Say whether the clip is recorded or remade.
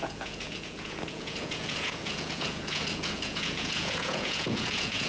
remade